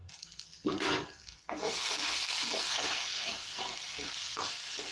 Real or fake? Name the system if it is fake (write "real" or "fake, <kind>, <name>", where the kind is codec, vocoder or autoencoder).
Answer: fake, codec, SNAC